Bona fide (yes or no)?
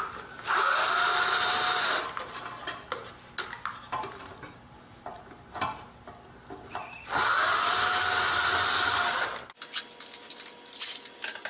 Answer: yes